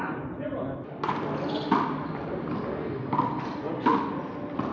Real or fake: real